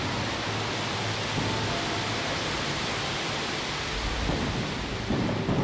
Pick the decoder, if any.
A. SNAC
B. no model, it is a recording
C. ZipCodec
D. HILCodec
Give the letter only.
B